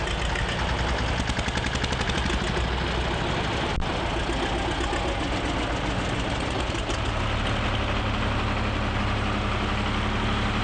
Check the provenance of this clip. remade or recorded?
recorded